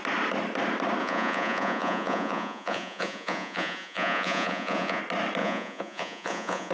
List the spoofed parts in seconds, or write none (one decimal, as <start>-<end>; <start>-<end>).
1.0-5.0; 5.4-6.7